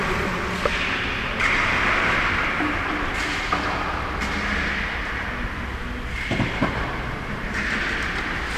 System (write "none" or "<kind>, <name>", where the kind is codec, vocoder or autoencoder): none